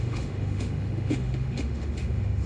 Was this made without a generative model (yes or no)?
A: no